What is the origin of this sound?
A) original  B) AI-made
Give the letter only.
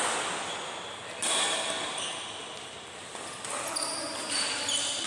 A